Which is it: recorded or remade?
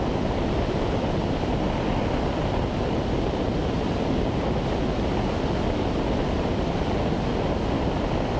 recorded